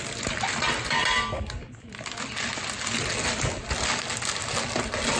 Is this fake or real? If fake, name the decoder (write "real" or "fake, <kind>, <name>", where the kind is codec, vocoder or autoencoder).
real